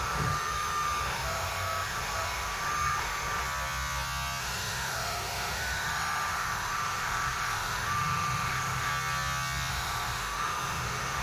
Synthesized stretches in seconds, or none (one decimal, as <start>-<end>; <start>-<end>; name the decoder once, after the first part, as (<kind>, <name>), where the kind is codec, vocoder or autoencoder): 0.0-3.4 (autoencoder, DAC-VAE); 4.4-8.9; 9.7-11.2